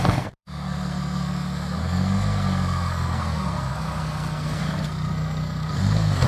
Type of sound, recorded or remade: remade